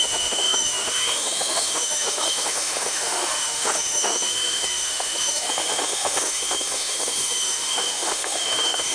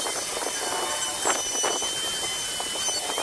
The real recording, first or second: second